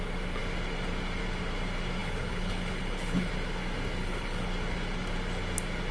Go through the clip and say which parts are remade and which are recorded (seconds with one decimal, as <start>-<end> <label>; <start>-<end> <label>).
0.0-2.0 recorded; 2.0-3.3 remade; 3.3-4.0 recorded; 4.0-4.5 remade; 4.5-5.9 recorded